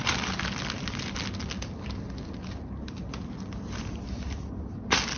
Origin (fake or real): real